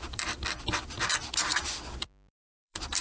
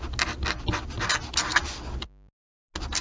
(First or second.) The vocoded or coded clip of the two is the first